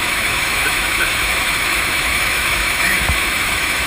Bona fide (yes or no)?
no